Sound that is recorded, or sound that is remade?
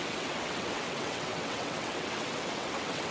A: remade